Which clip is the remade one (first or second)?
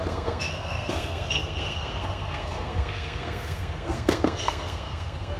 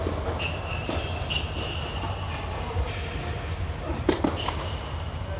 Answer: first